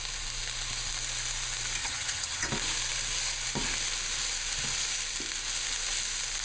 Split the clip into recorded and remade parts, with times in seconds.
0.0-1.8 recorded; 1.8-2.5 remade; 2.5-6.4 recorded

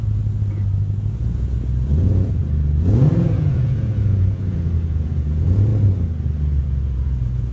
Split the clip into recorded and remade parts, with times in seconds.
0.0-5.7 remade; 5.7-6.6 recorded; 6.6-7.5 remade

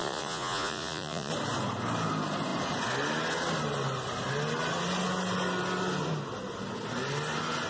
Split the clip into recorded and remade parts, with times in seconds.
0.0-1.3 remade; 1.3-7.7 recorded

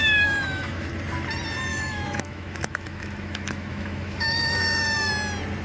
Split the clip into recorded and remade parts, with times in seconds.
0.0-0.9 remade; 0.9-1.7 recorded; 1.7-5.1 remade; 5.1-5.6 recorded

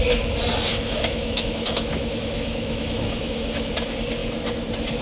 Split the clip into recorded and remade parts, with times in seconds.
0.0-0.7 recorded; 0.7-3.7 remade; 3.7-5.0 recorded

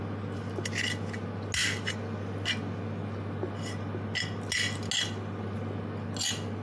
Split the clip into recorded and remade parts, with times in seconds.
0.0-6.6 recorded

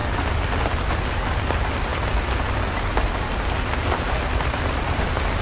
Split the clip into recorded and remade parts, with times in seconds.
0.0-5.4 recorded